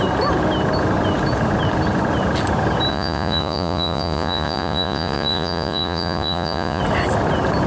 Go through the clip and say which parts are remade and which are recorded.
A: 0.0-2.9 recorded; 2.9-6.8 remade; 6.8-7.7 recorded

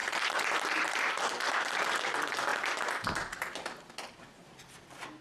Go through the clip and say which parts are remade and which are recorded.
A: 0.0-5.2 recorded

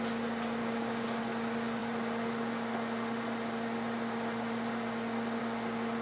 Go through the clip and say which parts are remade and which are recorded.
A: 0.0-0.6 recorded; 0.6-1.2 remade; 1.2-6.0 recorded

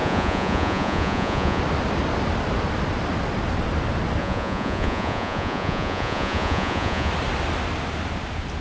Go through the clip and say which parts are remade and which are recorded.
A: 0.0-1.6 remade; 1.6-4.2 recorded; 4.2-7.1 remade; 7.1-8.6 recorded